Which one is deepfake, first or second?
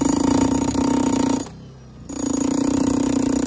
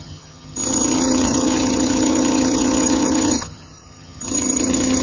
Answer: second